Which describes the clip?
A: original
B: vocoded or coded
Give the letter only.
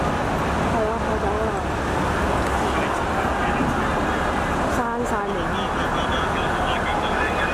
A